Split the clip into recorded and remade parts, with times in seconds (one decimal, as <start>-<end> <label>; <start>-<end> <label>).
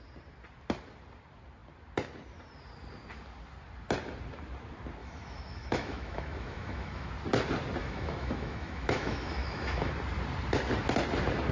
0.0-5.0 recorded; 5.0-7.1 remade; 7.1-7.8 recorded; 7.8-9.9 remade; 9.9-11.5 recorded